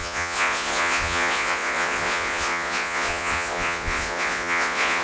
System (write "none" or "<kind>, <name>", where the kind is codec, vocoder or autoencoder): vocoder, Vocos